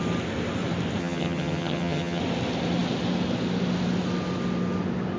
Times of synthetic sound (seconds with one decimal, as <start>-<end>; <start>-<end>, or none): 1.0-2.2